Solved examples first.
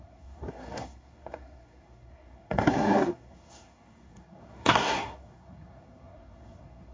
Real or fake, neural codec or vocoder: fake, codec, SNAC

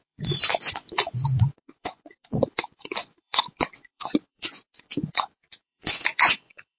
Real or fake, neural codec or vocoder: fake, vocoder, Vocos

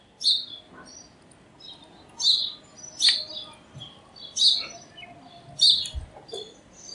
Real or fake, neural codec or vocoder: real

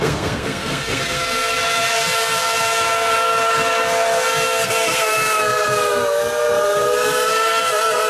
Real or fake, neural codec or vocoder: fake, codec, SNAC